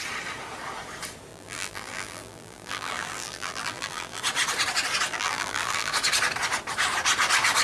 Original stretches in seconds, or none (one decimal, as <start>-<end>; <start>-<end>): 0.0-1.3; 4.2-5.1; 5.9-7.6